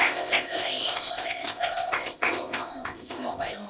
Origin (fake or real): fake